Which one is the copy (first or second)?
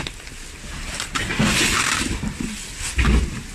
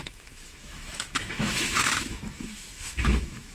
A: second